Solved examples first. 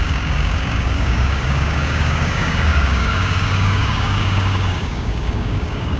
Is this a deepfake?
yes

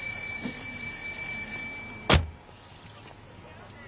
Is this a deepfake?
no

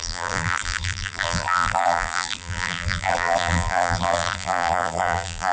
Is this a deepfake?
yes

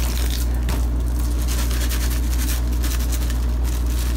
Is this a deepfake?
no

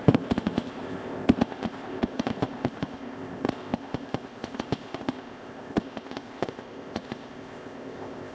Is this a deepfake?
yes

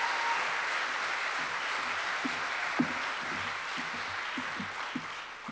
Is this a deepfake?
no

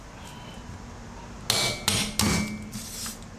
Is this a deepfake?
no